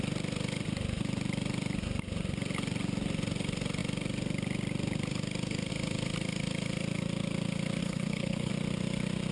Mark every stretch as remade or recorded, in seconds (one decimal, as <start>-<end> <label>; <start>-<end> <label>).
0.0-7.8 recorded; 7.8-8.5 remade; 8.5-9.3 recorded

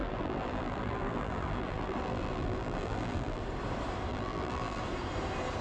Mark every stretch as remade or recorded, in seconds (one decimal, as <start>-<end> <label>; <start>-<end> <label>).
0.0-3.4 remade; 3.4-4.1 recorded; 4.1-4.8 remade; 4.8-5.6 recorded

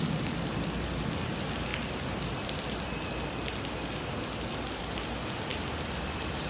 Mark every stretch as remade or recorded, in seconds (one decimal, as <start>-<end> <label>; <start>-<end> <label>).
0.0-6.5 recorded

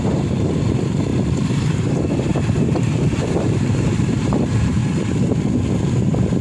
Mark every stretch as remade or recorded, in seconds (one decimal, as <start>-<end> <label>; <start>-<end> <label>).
0.0-1.1 remade; 1.1-1.8 recorded; 1.8-4.8 remade; 4.8-6.0 recorded; 6.0-6.4 remade

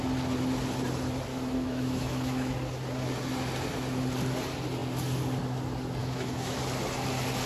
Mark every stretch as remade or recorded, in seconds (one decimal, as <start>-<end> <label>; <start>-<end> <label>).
0.0-1.3 recorded; 1.3-2.5 remade; 2.5-6.0 recorded; 6.0-6.6 remade; 6.6-7.5 recorded

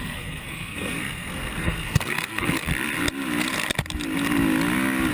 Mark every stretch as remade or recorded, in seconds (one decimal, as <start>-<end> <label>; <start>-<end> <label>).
0.0-2.7 remade; 2.7-5.1 recorded